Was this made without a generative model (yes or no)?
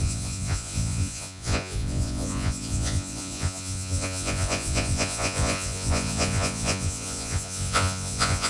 no